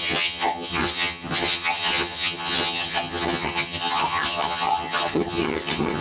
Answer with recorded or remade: remade